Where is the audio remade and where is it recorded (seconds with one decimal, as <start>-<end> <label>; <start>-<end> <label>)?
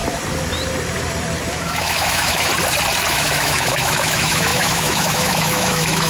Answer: 0.0-1.5 recorded; 1.5-2.5 remade; 2.5-3.1 recorded; 3.1-6.1 remade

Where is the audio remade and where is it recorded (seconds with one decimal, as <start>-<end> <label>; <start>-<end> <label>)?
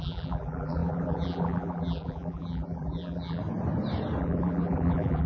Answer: 0.0-3.4 remade; 3.4-4.2 recorded; 4.2-5.3 remade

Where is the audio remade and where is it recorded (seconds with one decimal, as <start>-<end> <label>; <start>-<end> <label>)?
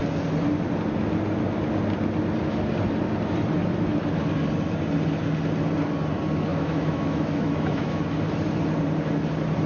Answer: 0.0-6.5 recorded; 6.5-8.0 remade; 8.0-9.7 recorded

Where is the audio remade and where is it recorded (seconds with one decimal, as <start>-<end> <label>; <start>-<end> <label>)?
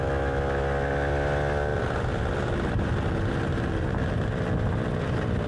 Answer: 0.0-1.7 recorded; 1.7-2.9 remade; 2.9-5.5 recorded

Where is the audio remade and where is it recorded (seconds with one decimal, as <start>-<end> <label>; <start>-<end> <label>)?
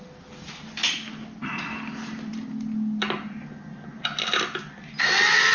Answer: 0.0-5.5 recorded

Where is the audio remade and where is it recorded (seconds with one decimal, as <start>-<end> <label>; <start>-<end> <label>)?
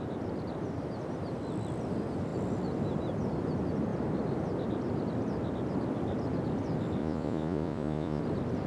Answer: 0.0-7.0 recorded; 7.0-8.2 remade; 8.2-8.7 recorded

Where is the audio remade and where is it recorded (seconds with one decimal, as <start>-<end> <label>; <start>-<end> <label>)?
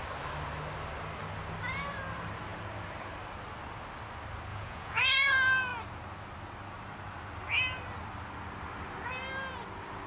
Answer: 0.0-4.5 recorded; 4.5-5.3 remade; 5.3-10.1 recorded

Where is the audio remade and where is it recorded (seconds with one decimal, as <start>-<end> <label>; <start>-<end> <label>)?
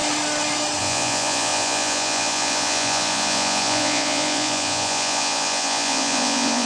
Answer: 0.0-0.8 recorded; 0.8-6.7 remade